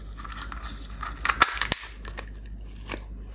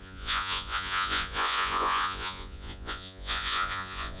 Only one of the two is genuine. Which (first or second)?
first